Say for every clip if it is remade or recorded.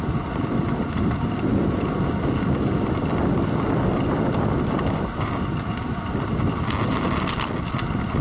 recorded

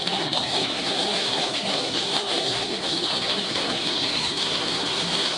remade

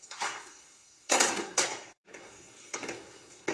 remade